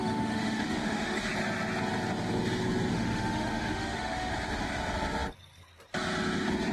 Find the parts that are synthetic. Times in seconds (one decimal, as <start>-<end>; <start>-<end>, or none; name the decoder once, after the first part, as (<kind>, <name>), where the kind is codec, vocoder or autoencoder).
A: 0.0-1.2 (autoencoder, DAC-VAE); 2.9-4.3